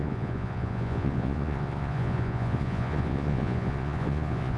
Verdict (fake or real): fake